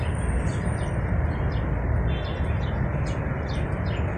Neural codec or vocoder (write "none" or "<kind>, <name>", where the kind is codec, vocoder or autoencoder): none